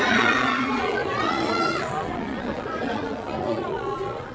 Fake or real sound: fake